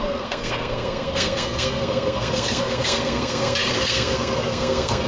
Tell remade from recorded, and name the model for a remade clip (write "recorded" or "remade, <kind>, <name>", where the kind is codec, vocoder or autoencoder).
remade, codec, SNAC